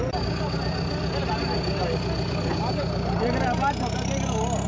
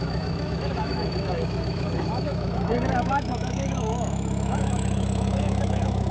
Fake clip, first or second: second